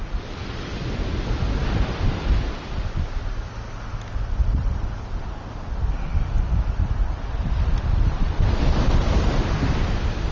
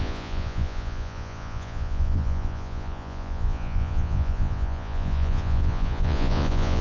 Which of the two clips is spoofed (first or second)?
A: second